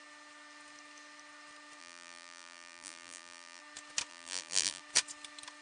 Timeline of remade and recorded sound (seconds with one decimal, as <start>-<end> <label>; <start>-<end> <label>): 0.0-1.8 recorded; 1.8-3.6 remade; 3.6-4.1 recorded; 4.1-4.8 remade; 4.8-5.6 recorded